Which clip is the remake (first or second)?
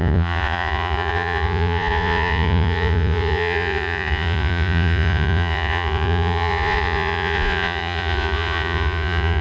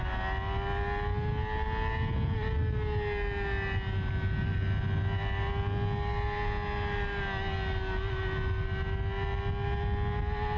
first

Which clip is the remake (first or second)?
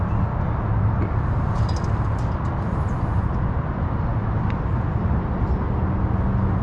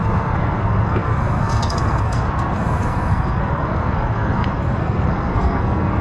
second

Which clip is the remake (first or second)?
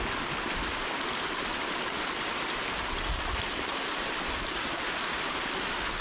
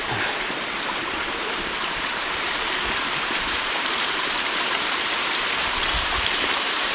second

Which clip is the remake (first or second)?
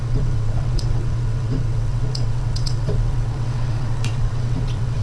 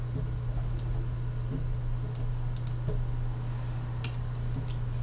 first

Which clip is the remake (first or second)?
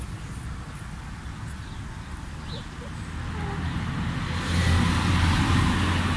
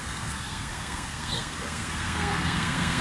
second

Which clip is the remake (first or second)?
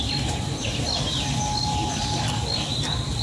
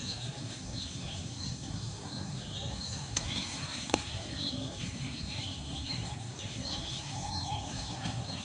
second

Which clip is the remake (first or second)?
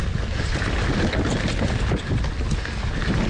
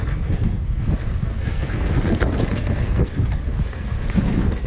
second